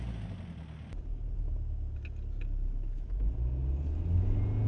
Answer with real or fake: real